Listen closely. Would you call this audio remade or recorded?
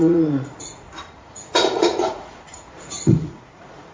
remade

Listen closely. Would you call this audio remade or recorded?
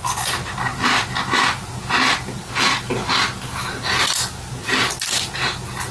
recorded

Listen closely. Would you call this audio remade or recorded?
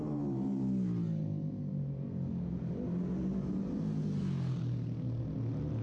recorded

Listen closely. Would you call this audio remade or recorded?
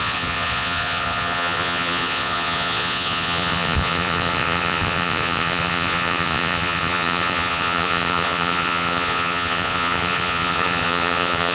remade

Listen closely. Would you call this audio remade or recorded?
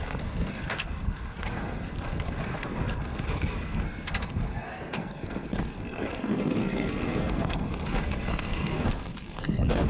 remade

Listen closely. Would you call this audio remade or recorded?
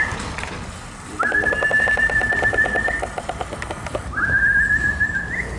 recorded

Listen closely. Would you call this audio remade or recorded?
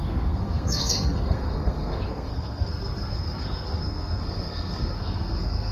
remade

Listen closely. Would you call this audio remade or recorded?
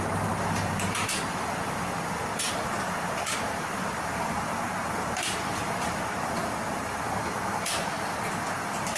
remade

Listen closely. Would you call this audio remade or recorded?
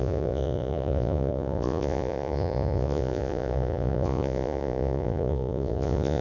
remade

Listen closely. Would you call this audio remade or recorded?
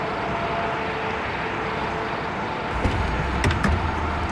recorded